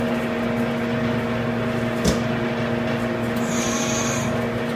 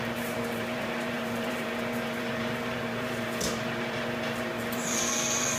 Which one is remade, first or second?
second